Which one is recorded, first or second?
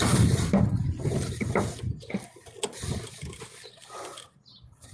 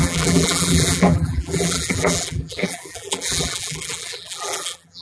first